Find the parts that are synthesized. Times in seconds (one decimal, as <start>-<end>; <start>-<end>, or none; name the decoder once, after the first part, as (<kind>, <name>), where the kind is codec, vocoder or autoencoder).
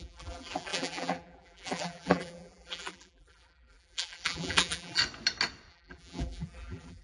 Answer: 0.0-5.0 (vocoder, BigVGAN v2); 5.7-7.0